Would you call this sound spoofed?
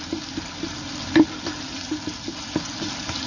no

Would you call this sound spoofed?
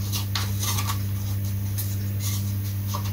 no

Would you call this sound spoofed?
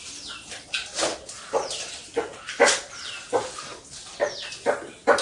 no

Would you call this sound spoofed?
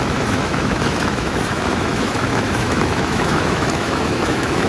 yes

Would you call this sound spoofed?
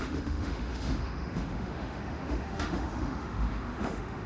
yes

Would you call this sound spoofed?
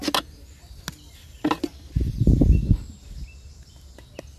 no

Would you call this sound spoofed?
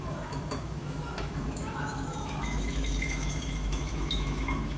yes